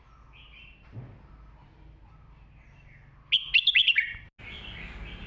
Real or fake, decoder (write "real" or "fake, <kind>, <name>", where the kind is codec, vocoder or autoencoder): real